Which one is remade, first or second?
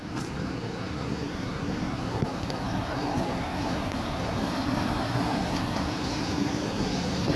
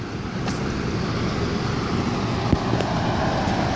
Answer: first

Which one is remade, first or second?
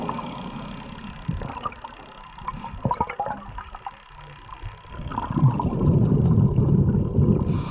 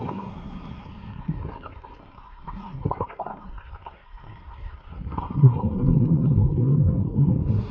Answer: second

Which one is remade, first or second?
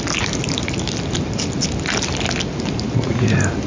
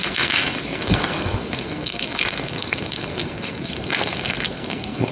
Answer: second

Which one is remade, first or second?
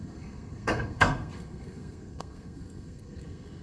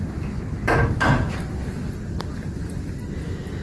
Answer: first